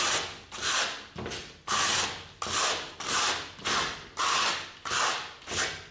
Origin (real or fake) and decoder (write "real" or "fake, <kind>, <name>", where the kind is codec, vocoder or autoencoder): real